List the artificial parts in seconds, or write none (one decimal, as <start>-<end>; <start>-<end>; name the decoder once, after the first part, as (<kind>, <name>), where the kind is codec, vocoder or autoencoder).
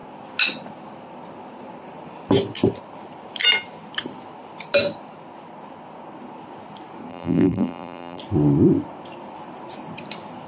7.1-8.2 (vocoder, BigVGAN v2)